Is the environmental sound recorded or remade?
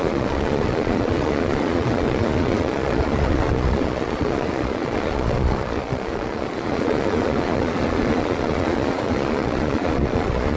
remade